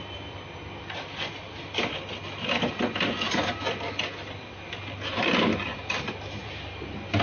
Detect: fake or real fake